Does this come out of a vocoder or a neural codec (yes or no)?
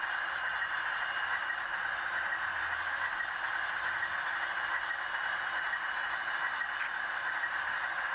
no